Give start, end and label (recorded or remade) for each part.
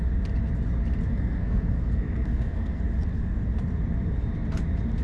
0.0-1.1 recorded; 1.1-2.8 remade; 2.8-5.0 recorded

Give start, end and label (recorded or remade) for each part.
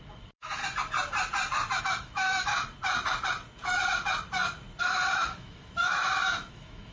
0.0-0.6 remade; 0.6-1.8 recorded; 1.8-2.5 remade; 2.5-4.8 recorded; 4.8-6.0 remade; 6.0-6.5 recorded; 6.5-6.9 remade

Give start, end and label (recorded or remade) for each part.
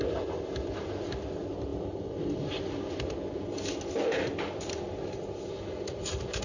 0.0-6.4 recorded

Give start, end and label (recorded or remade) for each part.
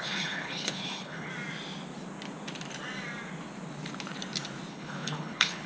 0.0-1.3 remade; 1.3-4.7 recorded; 4.7-5.7 remade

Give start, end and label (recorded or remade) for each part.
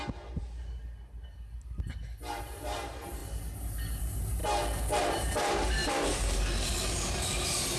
0.0-2.4 recorded; 2.4-3.2 remade; 3.2-4.0 recorded; 4.0-4.4 remade; 4.4-5.0 recorded; 5.0-7.8 remade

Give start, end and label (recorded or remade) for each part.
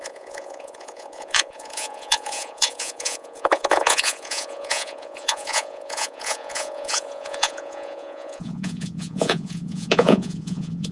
0.0-10.9 remade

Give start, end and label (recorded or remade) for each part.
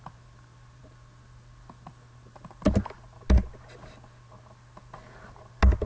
0.0-5.9 recorded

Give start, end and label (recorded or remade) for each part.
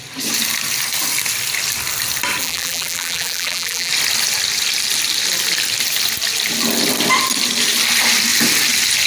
0.0-2.4 recorded; 2.4-3.9 remade; 3.9-9.1 recorded